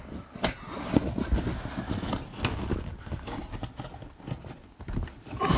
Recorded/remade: recorded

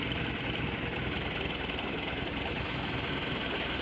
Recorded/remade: recorded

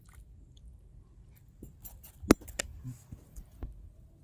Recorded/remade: recorded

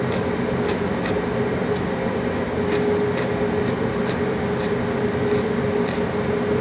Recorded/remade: recorded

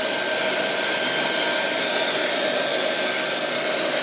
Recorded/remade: recorded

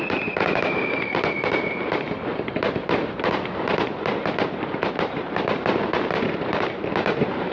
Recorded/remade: remade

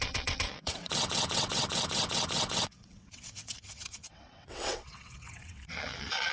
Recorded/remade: remade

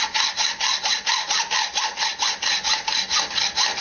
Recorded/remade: recorded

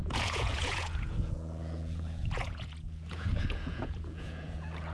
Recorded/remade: remade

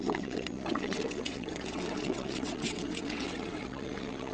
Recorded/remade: remade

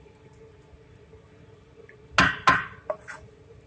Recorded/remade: recorded